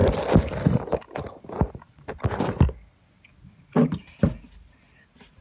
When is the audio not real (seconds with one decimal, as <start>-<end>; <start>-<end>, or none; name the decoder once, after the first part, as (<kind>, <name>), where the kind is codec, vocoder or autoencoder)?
none

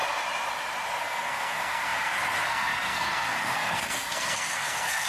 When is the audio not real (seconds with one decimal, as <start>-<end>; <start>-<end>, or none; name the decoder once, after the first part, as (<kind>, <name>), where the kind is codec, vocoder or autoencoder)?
1.0-5.1 (codec, SNAC)